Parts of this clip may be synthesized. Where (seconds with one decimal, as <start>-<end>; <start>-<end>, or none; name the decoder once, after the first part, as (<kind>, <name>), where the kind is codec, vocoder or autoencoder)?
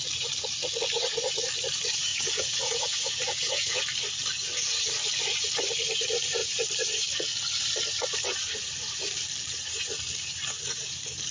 2.1-3.8 (vocoder, Vocos)